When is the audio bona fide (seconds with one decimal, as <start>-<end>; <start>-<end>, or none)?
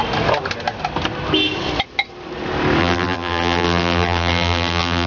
0.0-2.8